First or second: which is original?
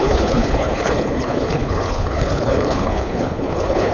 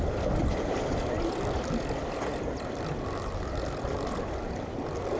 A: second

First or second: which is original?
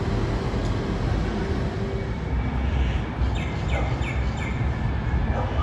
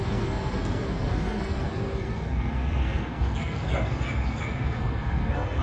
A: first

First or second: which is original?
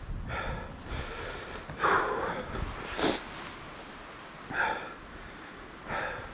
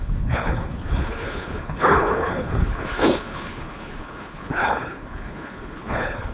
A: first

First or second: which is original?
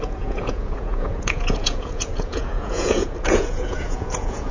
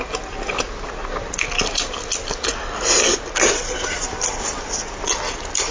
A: second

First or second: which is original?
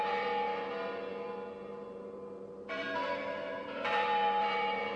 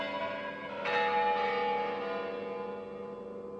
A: second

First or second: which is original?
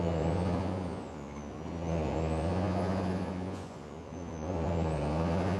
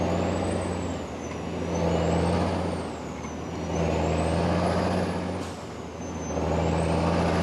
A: second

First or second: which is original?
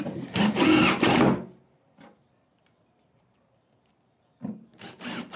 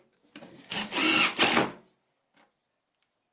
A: second